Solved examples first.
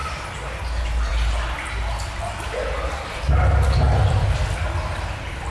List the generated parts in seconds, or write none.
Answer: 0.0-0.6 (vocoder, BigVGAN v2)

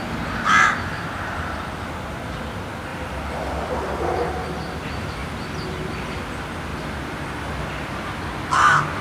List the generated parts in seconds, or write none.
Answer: 2.9-4.3 (vocoder, BigVGAN v2); 5.2-6.2

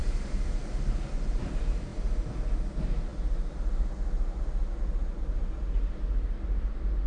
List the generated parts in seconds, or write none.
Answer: 0.0-1.9 (vocoder, BigVGAN v2); 2.7-3.1; 4.9-7.1

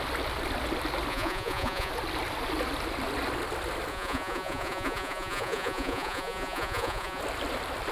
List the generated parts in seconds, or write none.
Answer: 1.1-1.9 (vocoder, Vocos); 3.9-7.2

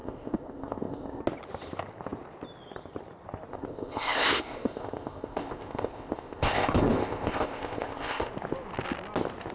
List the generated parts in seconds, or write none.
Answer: 0.0-1.2 (codec, ZipCodec); 3.5-8.3

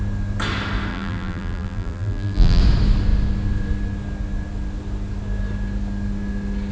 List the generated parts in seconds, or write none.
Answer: 0.9-2.6 (vocoder, BigVGAN v2)

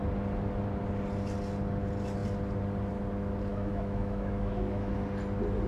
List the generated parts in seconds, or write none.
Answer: 3.5-4.9 (autoencoder, DAC-VAE)

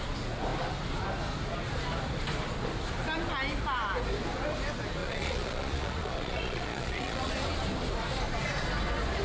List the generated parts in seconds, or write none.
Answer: 5.0-7.3 (vocoder, Vocos)